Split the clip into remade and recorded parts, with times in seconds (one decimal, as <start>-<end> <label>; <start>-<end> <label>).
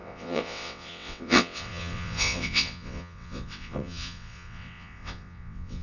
0.0-5.8 remade